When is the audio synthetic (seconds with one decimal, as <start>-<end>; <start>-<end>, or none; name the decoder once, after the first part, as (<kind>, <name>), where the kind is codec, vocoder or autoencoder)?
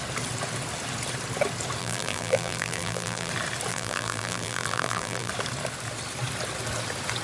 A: 1.8-3.3 (vocoder, BigVGAN v2); 3.7-5.3